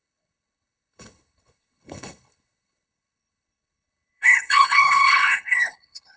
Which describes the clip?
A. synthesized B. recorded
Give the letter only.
A